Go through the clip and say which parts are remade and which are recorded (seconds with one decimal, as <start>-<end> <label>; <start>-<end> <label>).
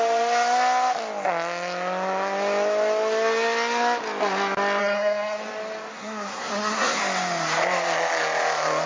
0.0-4.8 recorded; 4.8-5.4 remade; 5.4-5.9 recorded; 5.9-7.0 remade; 7.0-8.9 recorded